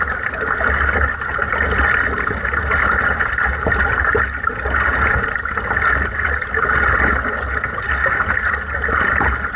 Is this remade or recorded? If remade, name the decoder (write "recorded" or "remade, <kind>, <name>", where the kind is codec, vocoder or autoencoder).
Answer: recorded